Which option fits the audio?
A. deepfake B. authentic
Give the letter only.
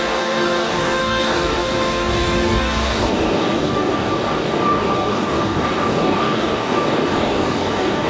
A